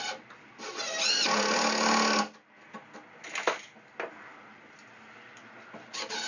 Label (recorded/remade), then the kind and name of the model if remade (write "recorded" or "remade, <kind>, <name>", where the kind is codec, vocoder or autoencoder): recorded